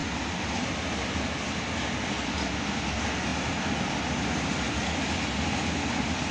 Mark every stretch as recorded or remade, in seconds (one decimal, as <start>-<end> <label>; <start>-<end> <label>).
0.0-6.3 recorded